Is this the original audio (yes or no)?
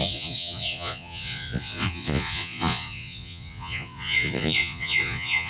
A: no